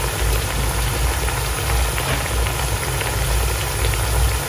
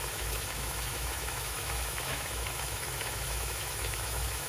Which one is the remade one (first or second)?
second